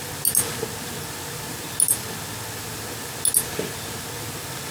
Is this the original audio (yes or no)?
yes